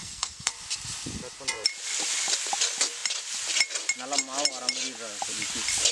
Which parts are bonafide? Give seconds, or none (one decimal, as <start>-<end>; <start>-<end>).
0.5-5.9